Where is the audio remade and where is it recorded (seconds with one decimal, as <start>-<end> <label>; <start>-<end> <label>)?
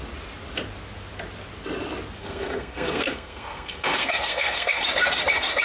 0.0-2.2 recorded; 2.2-4.8 remade; 4.8-5.6 recorded